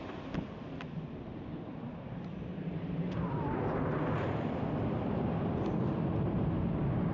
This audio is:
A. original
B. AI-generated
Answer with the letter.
A